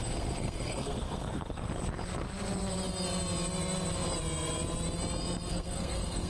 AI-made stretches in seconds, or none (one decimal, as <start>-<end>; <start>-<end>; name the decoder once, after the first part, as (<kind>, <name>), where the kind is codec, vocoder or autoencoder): 0.0-1.7 (codec, SNAC); 5.5-6.3